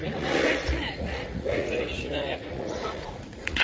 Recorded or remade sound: remade